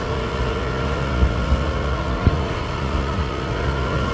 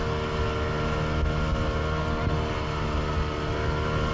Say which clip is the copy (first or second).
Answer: first